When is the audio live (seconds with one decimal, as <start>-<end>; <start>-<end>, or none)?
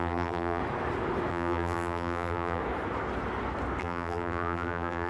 0.6-1.3; 2.6-3.8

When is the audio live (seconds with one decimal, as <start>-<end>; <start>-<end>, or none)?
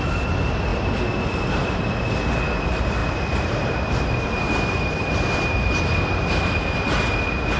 0.0-3.0; 5.8-7.6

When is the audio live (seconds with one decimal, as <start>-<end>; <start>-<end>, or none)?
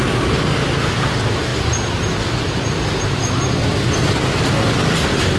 0.0-1.5; 4.7-5.4